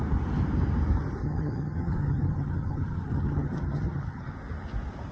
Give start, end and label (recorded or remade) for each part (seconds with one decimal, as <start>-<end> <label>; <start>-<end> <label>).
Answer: 0.0-1.2 recorded; 1.2-4.3 remade; 4.3-5.1 recorded